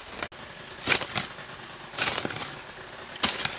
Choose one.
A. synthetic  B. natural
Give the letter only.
B